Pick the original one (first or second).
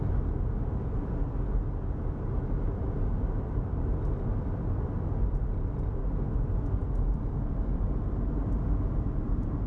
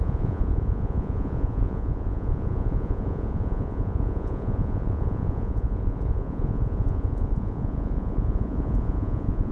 first